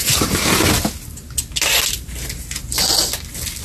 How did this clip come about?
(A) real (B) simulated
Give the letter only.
A